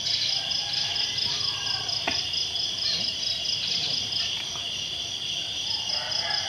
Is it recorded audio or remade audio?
recorded